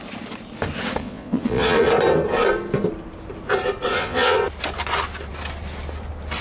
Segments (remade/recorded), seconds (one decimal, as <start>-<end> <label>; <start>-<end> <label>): 0.0-1.0 recorded; 1.0-1.9 remade; 1.9-3.9 recorded; 3.9-4.4 remade; 4.4-6.4 recorded